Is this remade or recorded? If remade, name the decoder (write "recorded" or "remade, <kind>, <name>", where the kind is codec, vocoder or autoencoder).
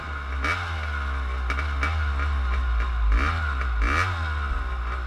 recorded